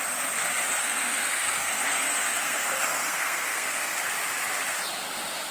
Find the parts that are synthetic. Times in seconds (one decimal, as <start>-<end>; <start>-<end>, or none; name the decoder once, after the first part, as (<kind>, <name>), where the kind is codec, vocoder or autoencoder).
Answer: 0.8-4.1 (codec, SNAC)